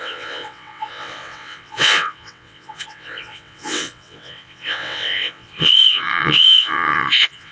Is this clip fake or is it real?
fake